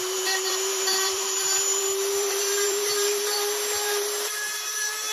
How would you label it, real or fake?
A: fake